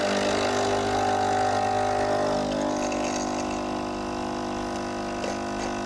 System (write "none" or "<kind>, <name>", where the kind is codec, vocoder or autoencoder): none